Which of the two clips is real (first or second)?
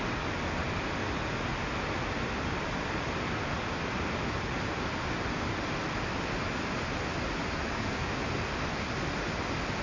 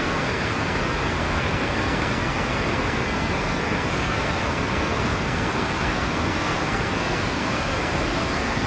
first